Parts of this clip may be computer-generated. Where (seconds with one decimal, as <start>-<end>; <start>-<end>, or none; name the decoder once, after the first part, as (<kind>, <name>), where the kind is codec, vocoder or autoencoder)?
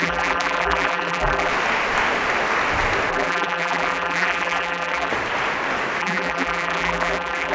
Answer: 0.0-1.5 (vocoder, BigVGAN v2); 3.1-5.1; 6.0-7.5